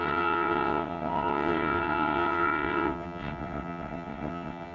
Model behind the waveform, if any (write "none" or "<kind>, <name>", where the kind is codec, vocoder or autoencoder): vocoder, WaveNeXt